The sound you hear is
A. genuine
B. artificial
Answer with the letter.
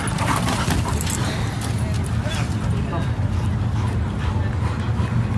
A